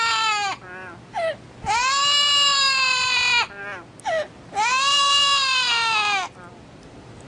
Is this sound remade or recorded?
recorded